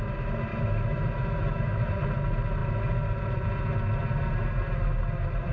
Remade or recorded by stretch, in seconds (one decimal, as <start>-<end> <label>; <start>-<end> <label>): 0.0-0.5 recorded; 0.5-1.9 remade; 1.9-5.5 recorded